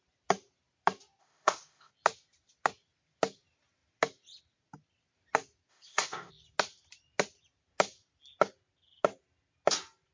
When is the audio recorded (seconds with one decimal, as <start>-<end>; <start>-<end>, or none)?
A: 0.0-1.2; 1.9-5.7; 6.3-10.1